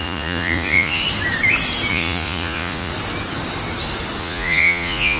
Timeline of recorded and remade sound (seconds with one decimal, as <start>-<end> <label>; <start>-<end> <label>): 0.0-1.0 remade; 1.0-1.9 recorded; 1.9-2.9 remade; 2.9-4.2 recorded; 4.2-5.2 remade